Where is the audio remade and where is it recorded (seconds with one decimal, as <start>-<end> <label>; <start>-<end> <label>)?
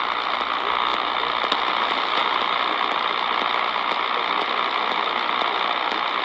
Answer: 0.0-0.9 recorded; 0.9-1.8 remade; 1.8-6.2 recorded